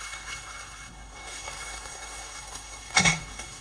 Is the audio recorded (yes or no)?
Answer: no